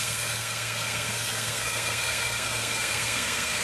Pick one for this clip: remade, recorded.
remade